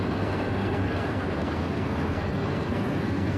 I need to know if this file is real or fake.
fake